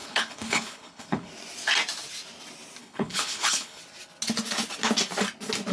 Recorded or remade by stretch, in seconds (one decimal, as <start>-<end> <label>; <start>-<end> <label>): 0.0-1.3 remade; 1.3-2.8 recorded; 2.8-3.8 remade; 3.8-5.7 recorded

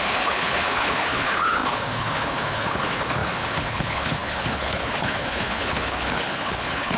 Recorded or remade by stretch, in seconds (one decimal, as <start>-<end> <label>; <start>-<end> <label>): 0.0-7.0 remade